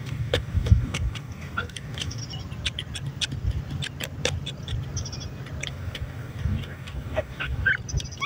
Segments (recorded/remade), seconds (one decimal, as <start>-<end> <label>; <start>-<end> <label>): 0.0-2.2 remade; 2.2-5.7 recorded; 5.7-7.7 remade; 7.7-8.3 recorded